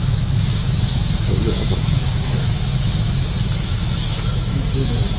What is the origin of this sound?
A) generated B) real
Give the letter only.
A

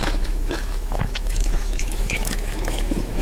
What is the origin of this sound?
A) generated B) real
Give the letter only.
A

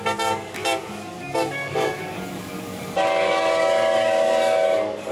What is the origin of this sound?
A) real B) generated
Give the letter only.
B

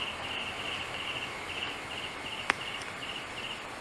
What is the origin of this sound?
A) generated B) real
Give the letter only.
B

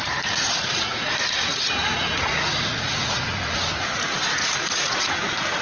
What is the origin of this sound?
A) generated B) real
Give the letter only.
A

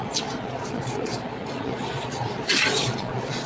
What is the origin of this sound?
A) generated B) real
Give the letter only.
A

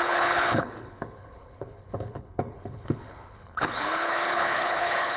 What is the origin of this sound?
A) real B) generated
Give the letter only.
B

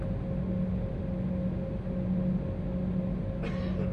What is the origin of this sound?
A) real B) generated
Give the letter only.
A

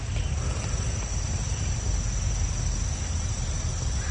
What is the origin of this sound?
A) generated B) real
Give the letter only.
B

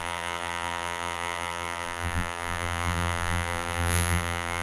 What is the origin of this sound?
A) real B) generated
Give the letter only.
B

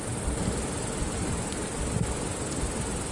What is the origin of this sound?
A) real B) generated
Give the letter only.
A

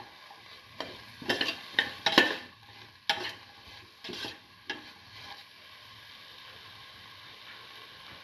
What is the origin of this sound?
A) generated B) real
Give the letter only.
B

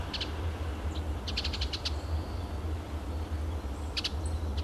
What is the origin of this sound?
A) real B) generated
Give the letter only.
A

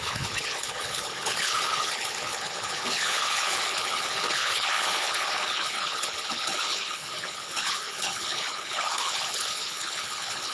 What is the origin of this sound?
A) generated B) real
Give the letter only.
A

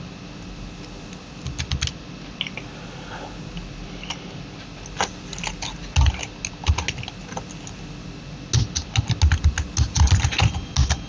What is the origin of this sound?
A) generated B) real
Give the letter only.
B